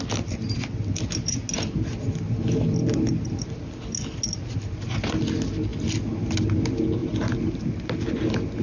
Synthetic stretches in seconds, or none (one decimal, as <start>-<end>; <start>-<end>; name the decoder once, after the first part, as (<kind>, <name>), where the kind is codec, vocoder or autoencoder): none